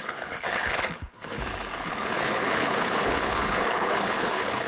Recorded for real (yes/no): no